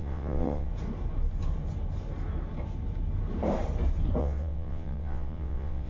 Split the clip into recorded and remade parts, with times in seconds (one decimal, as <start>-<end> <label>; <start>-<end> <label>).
0.0-0.7 remade; 0.7-4.2 recorded; 4.2-5.9 remade